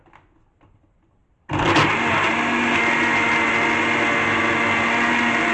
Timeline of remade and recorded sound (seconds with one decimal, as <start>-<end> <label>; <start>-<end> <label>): 0.0-5.5 recorded